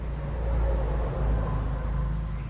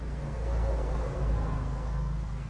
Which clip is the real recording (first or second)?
first